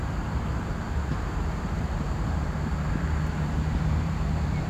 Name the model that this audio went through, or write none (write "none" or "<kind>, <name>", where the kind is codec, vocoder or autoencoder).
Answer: vocoder, BigVGAN v2